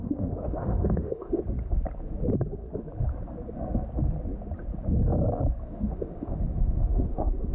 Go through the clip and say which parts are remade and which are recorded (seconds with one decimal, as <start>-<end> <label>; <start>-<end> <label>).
0.0-1.4 remade; 1.4-5.6 recorded; 5.6-7.5 remade